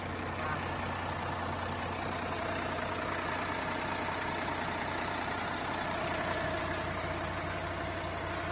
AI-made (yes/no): no